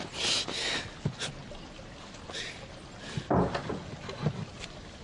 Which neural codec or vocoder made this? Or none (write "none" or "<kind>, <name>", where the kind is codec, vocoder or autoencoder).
none